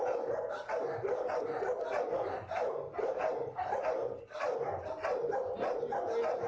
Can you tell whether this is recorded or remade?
recorded